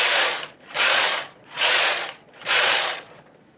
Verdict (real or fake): fake